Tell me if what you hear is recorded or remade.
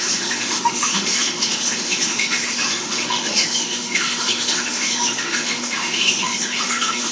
remade